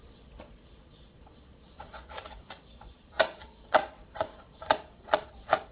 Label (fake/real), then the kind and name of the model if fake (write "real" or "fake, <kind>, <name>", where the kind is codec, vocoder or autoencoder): fake, vocoder, Vocos